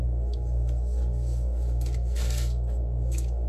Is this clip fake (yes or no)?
yes